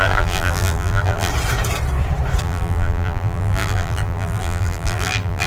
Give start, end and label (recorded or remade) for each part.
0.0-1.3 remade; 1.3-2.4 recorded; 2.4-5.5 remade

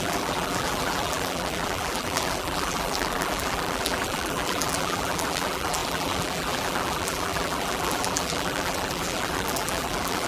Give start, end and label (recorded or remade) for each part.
0.0-10.3 remade

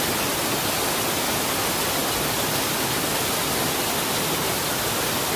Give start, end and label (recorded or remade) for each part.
0.0-5.4 recorded

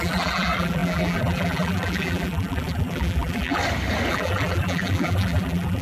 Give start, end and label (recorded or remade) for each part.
0.0-3.6 remade; 3.6-4.1 recorded; 4.1-5.8 remade